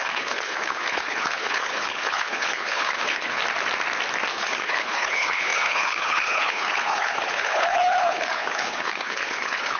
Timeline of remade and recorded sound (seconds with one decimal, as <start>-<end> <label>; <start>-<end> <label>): 0.0-3.4 remade; 3.4-4.3 recorded; 4.3-9.8 remade